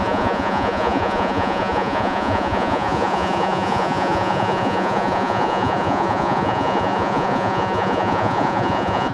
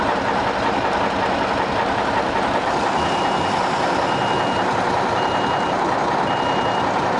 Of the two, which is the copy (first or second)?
first